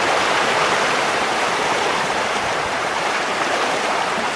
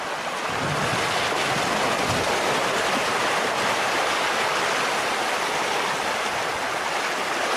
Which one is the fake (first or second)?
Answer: first